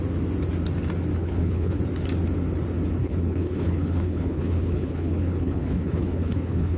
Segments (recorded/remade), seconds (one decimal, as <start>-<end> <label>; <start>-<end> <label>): 0.0-1.2 recorded; 1.2-1.8 remade; 1.8-3.0 recorded; 3.0-6.8 remade